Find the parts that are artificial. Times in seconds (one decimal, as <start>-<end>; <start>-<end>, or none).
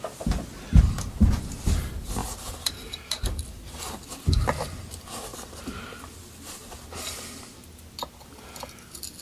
2.2-3.4; 5.3-6.2